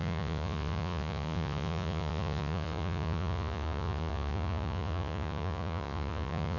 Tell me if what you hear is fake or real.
fake